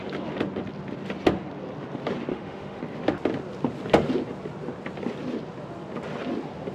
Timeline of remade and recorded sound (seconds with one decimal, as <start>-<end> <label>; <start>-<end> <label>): 0.0-2.3 recorded; 2.3-2.8 remade; 2.8-6.7 recorded